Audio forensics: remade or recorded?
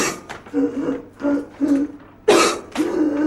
recorded